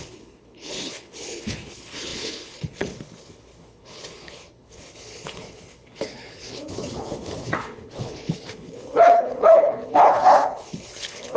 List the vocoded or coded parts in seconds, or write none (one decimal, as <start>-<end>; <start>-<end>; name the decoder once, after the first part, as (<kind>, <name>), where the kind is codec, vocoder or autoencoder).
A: 0.0-11.4 (codec, HILCodec)